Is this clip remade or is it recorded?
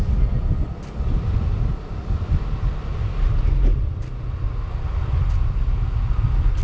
recorded